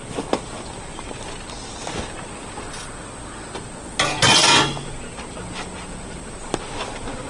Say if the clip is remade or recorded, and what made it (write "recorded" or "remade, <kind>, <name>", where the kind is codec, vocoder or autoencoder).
recorded